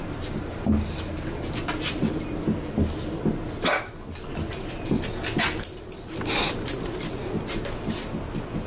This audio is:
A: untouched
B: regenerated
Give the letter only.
A